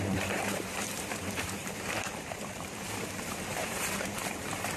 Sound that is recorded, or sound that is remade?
remade